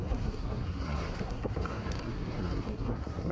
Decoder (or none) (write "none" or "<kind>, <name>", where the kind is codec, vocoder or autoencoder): codec, SNAC